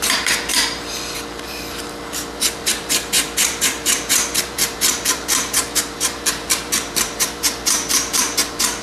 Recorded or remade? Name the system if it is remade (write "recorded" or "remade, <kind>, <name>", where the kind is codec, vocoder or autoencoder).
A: remade, vocoder, BigVGAN v2